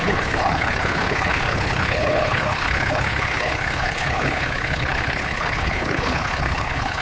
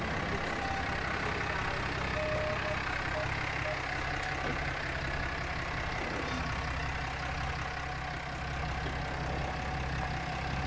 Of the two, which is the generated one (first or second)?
first